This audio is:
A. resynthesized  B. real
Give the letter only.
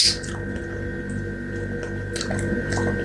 B